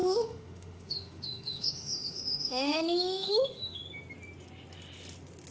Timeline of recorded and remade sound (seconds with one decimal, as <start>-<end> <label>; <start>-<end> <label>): 0.0-3.8 remade; 3.8-5.5 recorded